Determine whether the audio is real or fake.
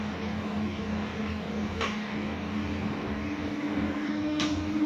fake